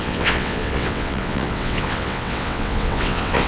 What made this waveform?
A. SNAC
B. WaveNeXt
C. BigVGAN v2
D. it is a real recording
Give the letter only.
B